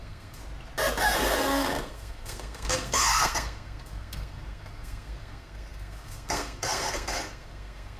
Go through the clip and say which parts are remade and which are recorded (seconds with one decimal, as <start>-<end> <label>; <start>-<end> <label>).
0.0-0.4 remade; 0.4-1.0 recorded; 1.0-8.0 remade